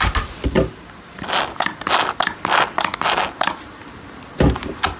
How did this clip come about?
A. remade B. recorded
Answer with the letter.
B